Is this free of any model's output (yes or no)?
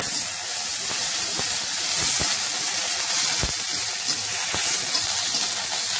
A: yes